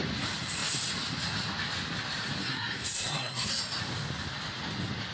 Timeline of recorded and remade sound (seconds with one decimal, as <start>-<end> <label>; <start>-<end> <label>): 0.0-2.4 recorded; 2.4-3.6 remade; 3.6-5.1 recorded